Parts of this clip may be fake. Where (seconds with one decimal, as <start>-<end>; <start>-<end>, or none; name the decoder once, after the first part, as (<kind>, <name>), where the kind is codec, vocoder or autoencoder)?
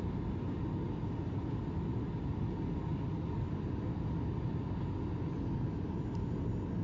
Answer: none